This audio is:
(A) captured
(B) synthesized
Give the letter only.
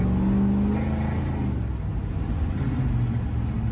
A